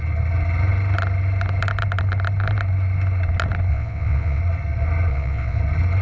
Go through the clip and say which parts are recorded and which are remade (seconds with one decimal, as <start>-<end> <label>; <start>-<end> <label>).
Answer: 0.0-3.7 recorded; 3.7-4.4 remade; 4.4-5.1 recorded; 5.1-5.6 remade; 5.6-6.0 recorded